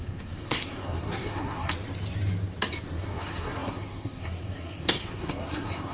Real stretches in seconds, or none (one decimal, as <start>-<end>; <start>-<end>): 1.7-3.0